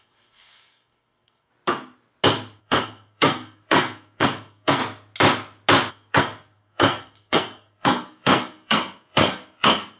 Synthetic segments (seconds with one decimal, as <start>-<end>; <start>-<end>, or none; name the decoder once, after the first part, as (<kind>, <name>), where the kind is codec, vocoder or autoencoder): 0.0-1.5 (codec, SNAC); 2.6-4.8; 5.9-10.0